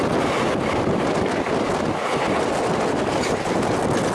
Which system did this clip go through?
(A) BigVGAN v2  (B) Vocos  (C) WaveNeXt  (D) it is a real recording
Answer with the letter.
D